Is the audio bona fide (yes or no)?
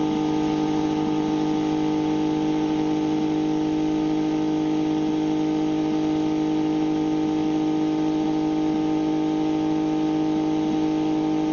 yes